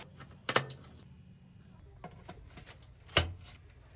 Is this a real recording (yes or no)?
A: yes